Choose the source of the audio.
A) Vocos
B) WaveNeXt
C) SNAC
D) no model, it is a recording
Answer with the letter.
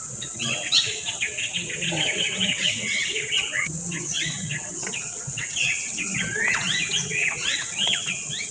B